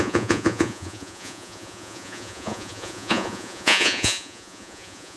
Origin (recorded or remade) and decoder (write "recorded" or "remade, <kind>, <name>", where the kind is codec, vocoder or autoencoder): remade, vocoder, Vocos